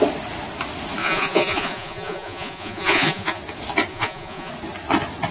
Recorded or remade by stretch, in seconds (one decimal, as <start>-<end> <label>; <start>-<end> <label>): 0.0-1.0 recorded; 1.0-3.4 remade; 3.4-3.9 recorded; 3.9-4.5 remade; 4.5-5.3 recorded